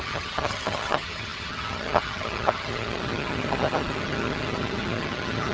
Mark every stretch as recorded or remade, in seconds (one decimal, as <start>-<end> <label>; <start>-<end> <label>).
0.0-5.5 remade